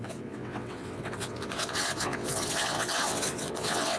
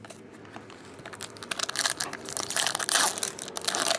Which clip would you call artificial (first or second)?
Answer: first